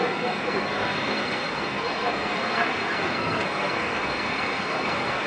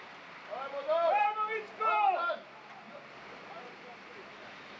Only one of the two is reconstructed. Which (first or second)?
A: first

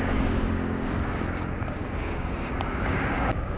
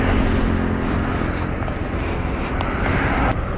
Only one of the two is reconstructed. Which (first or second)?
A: first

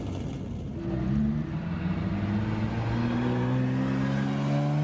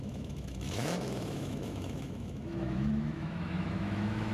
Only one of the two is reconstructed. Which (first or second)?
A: second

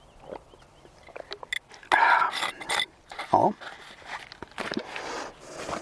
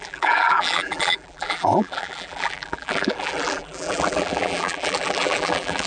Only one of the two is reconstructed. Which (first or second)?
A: second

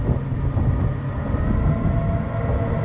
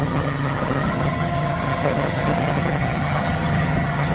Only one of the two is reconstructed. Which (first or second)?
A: second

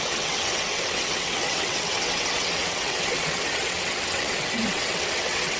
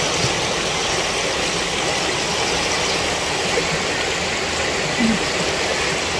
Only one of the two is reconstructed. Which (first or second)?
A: first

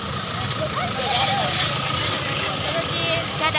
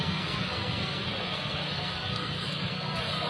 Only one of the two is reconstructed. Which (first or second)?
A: second